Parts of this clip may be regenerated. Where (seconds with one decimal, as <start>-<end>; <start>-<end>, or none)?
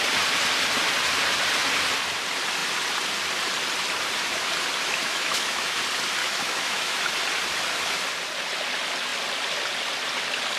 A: 5.0-5.8; 6.2-7.1